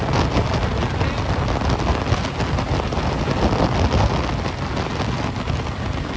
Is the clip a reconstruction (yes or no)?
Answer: no